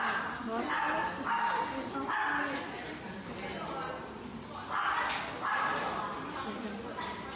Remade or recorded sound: recorded